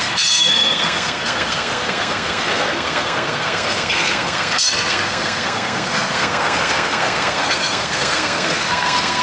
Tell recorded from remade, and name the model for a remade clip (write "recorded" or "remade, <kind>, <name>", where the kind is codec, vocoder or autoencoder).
remade, codec, SNAC